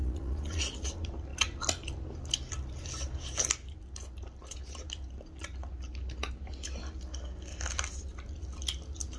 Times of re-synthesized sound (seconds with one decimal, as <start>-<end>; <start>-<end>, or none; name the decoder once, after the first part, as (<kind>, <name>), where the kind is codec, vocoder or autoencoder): 0.0-0.6 (vocoder, Vocos)